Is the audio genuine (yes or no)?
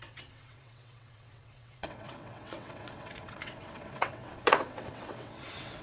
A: no